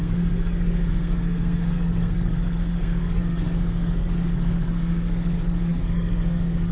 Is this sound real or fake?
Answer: fake